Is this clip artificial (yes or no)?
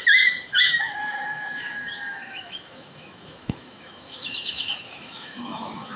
yes